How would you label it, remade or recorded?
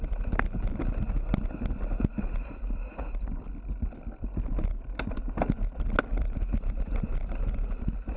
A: recorded